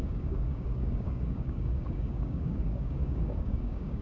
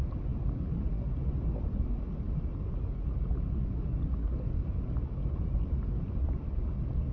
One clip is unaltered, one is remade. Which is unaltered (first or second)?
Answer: second